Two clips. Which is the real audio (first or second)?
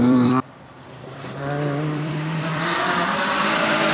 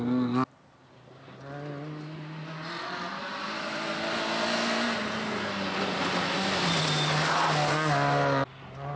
second